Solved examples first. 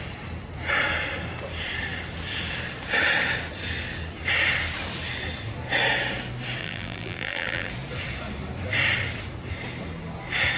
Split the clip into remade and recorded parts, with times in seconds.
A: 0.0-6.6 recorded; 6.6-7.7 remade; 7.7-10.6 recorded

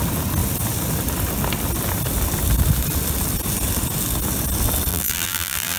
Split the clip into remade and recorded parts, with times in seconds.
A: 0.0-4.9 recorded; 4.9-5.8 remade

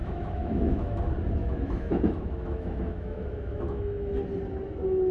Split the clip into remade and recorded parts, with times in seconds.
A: 0.0-1.0 remade; 1.0-1.4 recorded; 1.4-4.2 remade; 4.2-5.1 recorded

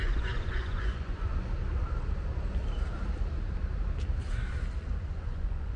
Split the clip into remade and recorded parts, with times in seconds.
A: 0.0-1.3 remade; 1.3-4.8 recorded; 4.8-5.8 remade

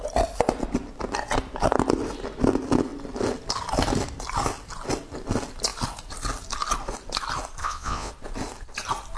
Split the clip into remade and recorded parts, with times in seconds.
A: 0.0-7.6 recorded; 7.6-8.1 remade; 8.1-9.2 recorded